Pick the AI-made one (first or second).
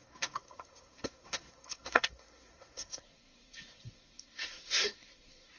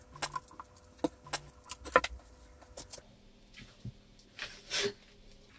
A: first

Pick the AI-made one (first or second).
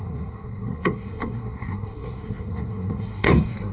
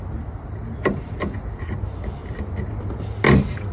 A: first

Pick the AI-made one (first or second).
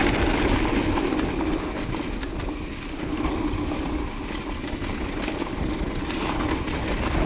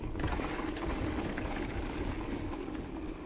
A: second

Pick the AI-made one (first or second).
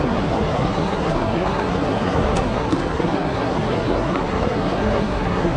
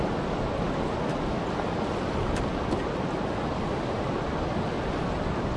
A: first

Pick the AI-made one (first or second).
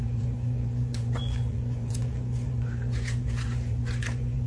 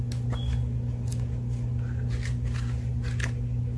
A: first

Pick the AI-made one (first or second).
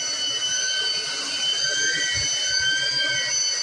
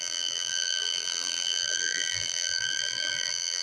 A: second